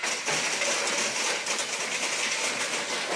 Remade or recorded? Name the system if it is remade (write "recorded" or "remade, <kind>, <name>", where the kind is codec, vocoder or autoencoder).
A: recorded